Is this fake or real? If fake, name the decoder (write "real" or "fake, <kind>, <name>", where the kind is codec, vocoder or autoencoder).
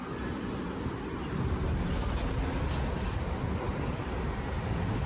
real